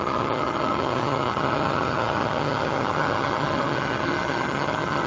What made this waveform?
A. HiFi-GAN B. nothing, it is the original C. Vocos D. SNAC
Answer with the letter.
A